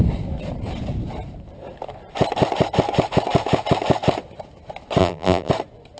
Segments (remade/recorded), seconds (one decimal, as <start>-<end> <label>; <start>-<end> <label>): 0.0-5.0 recorded; 5.0-5.5 remade; 5.5-6.0 recorded